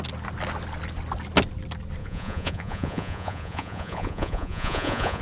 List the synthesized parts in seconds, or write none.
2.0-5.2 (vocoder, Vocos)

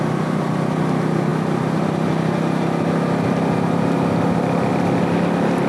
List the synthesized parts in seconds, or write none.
none

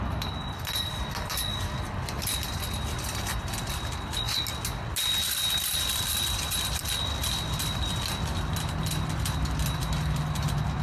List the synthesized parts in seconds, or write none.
none

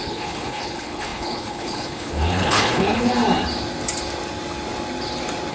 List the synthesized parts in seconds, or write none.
0.0-3.1 (codec, HILCodec)

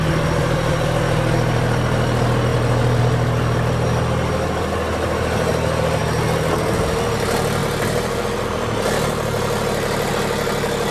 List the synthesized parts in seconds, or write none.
none

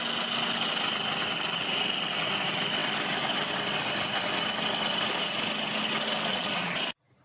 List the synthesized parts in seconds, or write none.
6.3-6.8 (vocoder, Vocos)